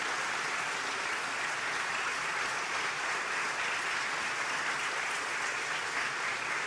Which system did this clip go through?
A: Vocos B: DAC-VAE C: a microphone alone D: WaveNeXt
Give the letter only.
C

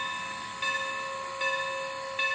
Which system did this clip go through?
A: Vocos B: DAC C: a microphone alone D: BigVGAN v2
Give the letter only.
C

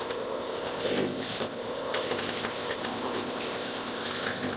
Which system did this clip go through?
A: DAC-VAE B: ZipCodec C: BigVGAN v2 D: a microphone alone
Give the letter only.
B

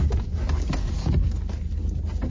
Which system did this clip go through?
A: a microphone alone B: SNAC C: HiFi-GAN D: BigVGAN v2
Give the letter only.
A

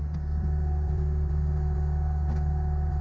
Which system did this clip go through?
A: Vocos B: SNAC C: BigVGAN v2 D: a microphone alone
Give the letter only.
D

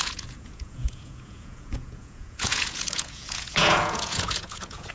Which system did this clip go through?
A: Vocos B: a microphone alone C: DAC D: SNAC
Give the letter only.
A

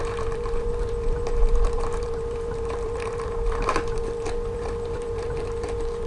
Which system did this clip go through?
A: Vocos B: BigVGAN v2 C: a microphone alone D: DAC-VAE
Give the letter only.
B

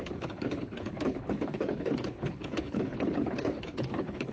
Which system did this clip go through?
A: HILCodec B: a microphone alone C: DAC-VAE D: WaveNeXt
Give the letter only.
A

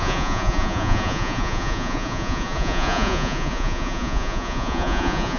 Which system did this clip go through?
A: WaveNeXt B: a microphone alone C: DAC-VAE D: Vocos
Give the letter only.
D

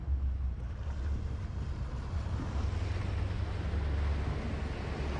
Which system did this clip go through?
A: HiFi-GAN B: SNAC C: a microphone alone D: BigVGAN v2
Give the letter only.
C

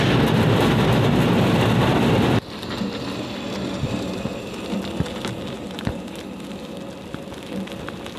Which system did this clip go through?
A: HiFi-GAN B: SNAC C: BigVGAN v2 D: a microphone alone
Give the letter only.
D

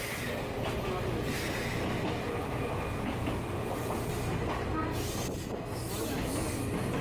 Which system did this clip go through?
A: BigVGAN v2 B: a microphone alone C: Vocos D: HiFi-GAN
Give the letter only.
B